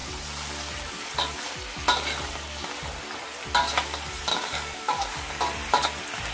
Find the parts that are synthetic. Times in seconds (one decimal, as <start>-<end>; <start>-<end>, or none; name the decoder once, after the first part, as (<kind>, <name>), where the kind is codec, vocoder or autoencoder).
4.3-5.4 (codec, DAC)